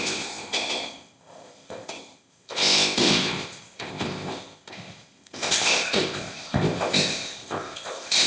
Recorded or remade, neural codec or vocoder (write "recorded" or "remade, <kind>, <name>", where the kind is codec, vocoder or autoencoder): remade, codec, ZipCodec